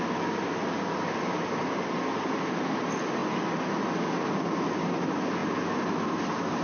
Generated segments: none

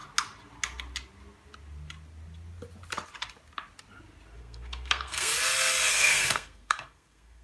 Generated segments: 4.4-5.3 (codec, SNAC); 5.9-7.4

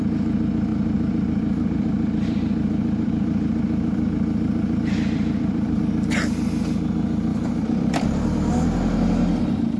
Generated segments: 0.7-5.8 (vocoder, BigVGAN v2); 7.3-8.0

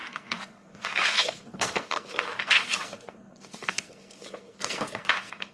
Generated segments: 0.0-5.5 (codec, SNAC)

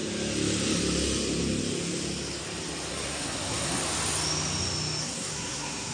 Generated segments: 2.9-3.8 (codec, SNAC); 5.0-5.9

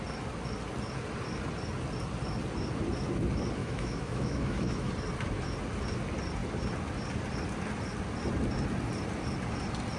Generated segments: 3.6-4.9 (autoencoder, DAC-VAE)

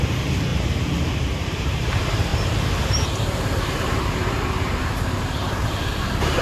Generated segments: 0.0-0.5 (vocoder, BigVGAN v2); 1.1-2.3; 3.2-6.4

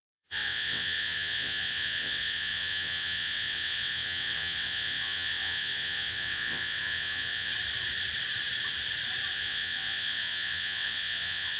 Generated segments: 0.0-7.5 (vocoder, WaveNeXt); 9.3-11.6